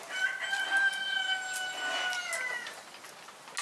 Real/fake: real